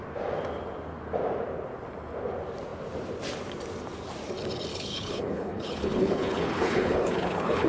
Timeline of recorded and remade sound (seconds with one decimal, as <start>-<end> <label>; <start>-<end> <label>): 0.0-4.7 recorded; 4.7-7.7 remade